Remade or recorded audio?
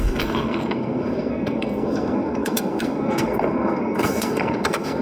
remade